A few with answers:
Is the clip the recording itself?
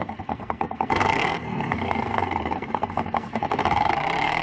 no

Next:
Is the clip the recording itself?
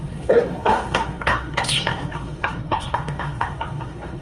no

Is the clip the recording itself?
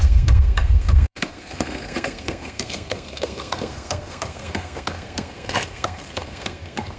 no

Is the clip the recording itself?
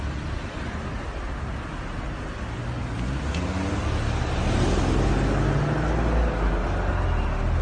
yes